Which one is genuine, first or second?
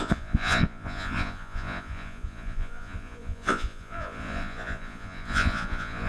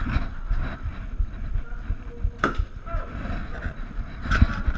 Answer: second